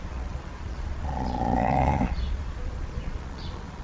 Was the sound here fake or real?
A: fake